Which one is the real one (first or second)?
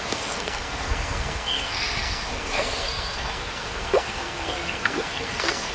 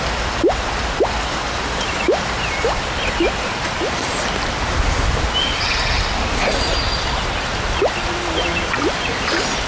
second